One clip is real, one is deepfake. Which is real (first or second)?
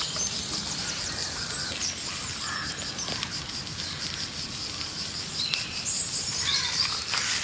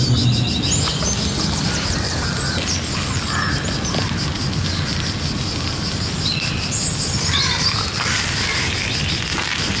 second